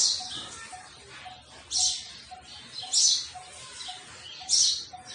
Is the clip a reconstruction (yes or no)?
no